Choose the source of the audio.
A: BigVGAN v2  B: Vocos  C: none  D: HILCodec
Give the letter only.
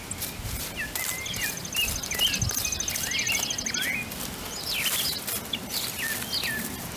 C